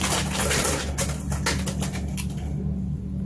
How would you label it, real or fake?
real